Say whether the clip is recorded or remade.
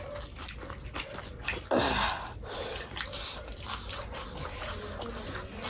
recorded